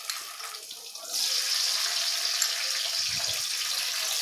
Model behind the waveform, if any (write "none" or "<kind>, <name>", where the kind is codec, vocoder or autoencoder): none